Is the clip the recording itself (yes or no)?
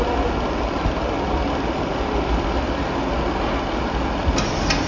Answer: yes